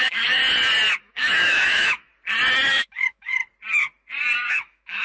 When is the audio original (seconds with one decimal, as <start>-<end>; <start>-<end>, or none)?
0.4-1.0; 2.1-2.7; 3.4-4.5